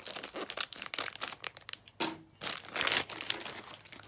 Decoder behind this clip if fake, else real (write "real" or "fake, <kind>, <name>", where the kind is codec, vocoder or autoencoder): real